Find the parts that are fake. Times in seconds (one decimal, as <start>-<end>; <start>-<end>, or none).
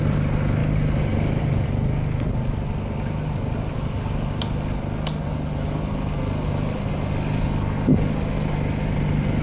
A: none